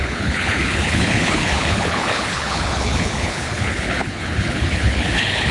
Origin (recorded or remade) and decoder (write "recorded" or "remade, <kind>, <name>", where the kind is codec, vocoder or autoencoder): remade, codec, HILCodec